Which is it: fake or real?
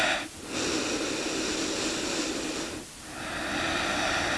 real